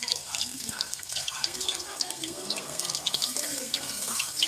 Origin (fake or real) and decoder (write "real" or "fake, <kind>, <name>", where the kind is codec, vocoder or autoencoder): fake, codec, SNAC